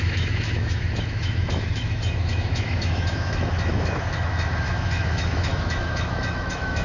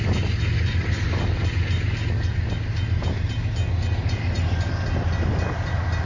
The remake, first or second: first